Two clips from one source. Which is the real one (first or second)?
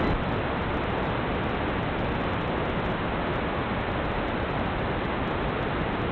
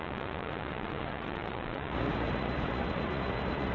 first